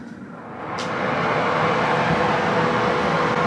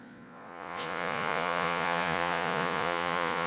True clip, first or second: first